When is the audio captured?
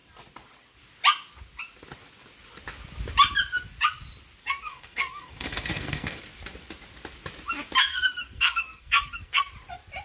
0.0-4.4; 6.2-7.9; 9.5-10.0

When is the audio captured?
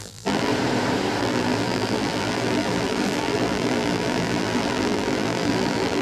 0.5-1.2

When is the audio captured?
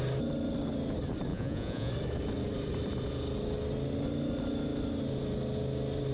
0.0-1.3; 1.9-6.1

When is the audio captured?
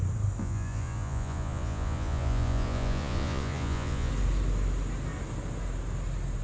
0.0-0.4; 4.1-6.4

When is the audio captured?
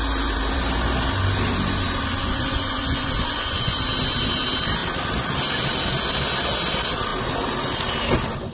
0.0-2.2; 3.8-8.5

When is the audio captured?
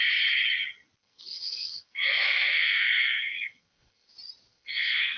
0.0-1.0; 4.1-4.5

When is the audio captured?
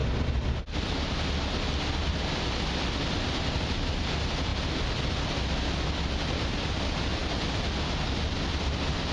0.0-9.1